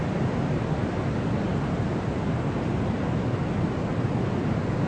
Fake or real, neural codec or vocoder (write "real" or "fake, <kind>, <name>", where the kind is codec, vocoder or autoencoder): real